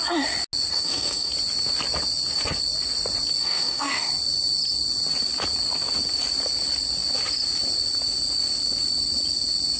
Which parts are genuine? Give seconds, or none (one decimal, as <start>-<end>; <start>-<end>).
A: 0.0-0.7; 1.3-3.4; 4.1-9.8